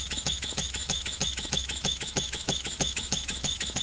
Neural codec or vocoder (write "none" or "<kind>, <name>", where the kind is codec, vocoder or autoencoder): autoencoder, DAC-VAE